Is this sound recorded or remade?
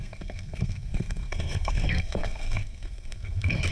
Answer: remade